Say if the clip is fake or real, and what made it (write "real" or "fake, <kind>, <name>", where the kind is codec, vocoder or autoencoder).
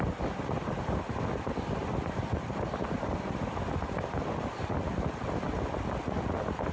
real